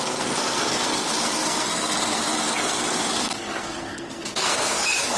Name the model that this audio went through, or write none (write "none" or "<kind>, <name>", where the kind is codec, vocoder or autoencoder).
codec, SNAC